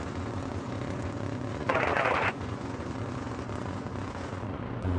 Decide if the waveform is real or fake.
fake